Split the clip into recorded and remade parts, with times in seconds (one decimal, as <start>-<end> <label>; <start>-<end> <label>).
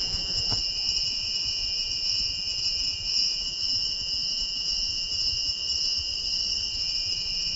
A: 0.0-6.1 remade; 6.1-6.7 recorded; 6.7-7.6 remade